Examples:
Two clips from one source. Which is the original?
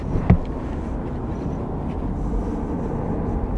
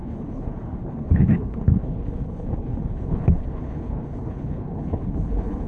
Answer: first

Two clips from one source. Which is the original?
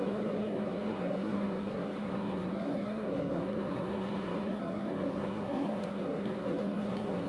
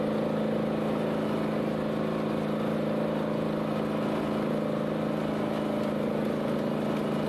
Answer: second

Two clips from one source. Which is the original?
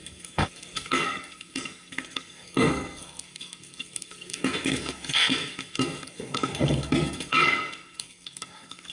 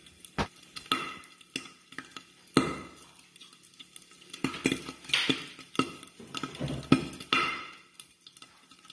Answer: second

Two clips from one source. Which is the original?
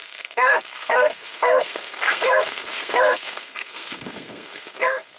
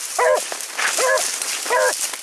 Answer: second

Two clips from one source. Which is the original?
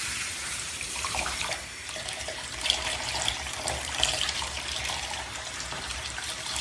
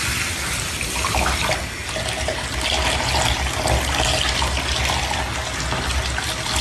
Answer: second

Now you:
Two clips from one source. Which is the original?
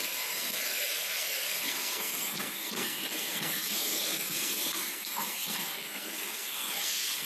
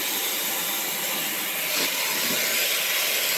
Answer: second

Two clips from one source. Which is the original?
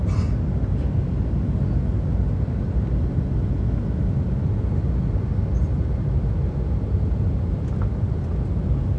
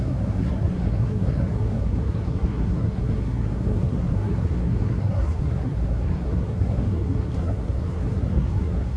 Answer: first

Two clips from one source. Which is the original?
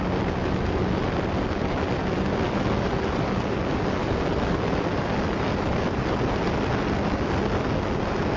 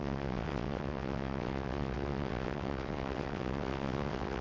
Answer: first